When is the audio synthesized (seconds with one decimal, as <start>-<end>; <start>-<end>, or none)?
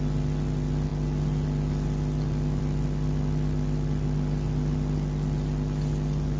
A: none